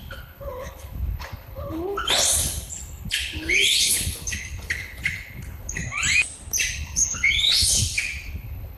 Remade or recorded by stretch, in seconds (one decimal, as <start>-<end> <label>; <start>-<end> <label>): 0.0-5.8 remade; 5.8-6.7 recorded; 6.7-8.8 remade